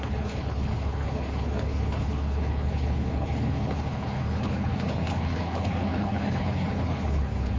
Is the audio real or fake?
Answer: fake